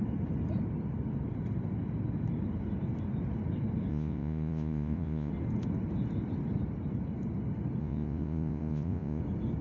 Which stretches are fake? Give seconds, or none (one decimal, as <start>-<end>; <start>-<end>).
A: 3.9-5.3; 7.8-9.2